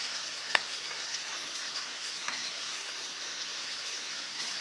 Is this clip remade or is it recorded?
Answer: remade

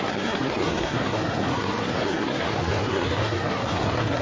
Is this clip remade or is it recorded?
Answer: remade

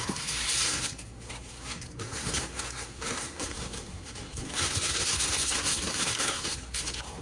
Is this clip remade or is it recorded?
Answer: remade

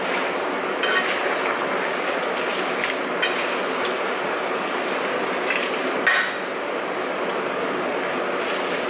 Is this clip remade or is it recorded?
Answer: recorded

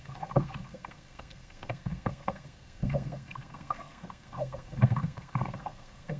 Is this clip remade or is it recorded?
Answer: remade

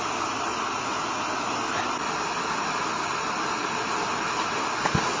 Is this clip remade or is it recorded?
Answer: recorded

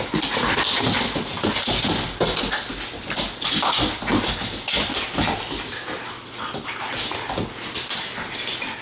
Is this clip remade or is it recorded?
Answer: recorded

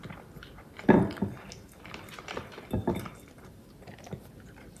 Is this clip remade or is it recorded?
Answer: recorded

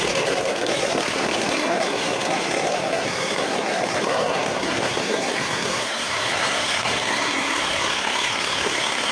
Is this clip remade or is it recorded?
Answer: remade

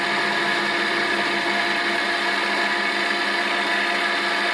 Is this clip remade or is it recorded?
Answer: recorded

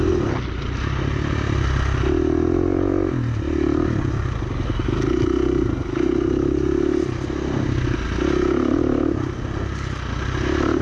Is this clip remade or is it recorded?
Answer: recorded